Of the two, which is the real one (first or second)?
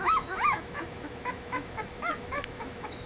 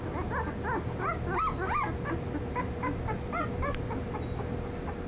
second